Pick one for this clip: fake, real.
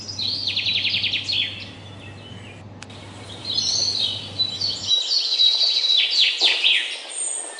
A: real